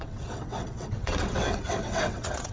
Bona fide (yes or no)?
no